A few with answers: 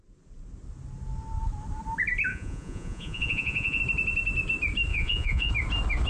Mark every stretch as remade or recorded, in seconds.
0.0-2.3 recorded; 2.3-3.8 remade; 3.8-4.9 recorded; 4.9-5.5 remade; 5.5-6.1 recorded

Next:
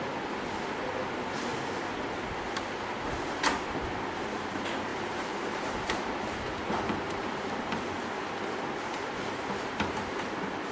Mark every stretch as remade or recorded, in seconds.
0.0-4.9 recorded; 4.9-7.8 remade; 7.8-9.0 recorded; 9.0-10.0 remade; 10.0-10.7 recorded

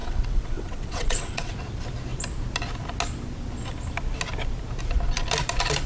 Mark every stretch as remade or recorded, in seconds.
0.0-1.5 remade; 1.5-5.9 recorded

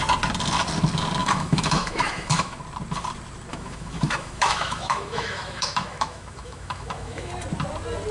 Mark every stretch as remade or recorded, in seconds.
0.0-1.2 recorded; 1.2-2.6 remade; 2.6-3.5 recorded; 3.5-7.3 remade; 7.3-8.1 recorded

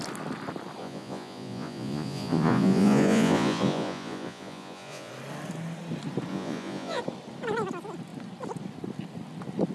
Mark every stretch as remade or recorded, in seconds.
0.0-0.8 recorded; 0.8-5.1 remade; 5.1-6.3 recorded; 6.3-7.0 remade; 7.0-9.7 recorded